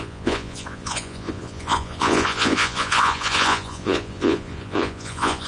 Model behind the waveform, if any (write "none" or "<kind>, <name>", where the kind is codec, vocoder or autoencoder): vocoder, Vocos